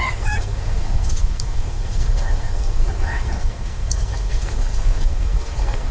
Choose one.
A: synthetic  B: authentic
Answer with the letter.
A